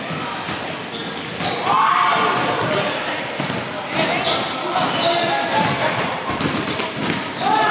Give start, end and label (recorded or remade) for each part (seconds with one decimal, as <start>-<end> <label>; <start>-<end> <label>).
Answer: 0.0-7.7 recorded